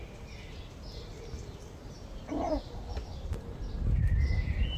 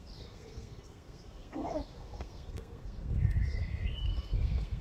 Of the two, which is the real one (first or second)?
first